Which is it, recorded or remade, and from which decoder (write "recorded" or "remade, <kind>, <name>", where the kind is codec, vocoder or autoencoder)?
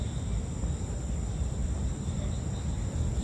recorded